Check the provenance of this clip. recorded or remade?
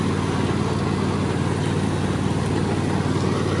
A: recorded